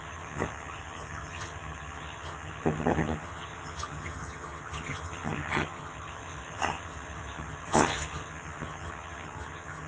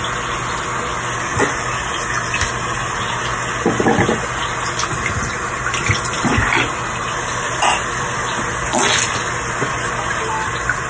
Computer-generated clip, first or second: first